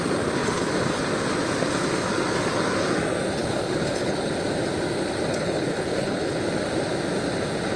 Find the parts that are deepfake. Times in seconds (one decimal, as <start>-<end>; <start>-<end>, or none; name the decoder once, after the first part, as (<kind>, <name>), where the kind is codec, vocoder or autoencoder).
0.4-1.0 (codec, HILCodec); 3.4-4.3; 5.3-6.4